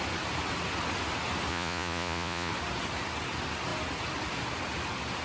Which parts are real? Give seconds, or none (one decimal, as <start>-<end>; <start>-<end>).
0.0-1.5; 2.5-5.2